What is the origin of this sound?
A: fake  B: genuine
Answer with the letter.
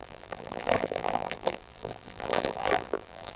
A